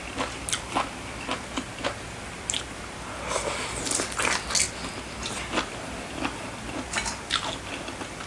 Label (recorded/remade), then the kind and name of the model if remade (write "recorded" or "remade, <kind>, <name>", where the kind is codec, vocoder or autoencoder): recorded